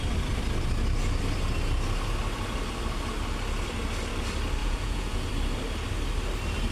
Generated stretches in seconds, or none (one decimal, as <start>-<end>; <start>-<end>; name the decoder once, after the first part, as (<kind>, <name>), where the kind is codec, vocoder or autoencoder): 4.6-5.3 (vocoder, Vocos)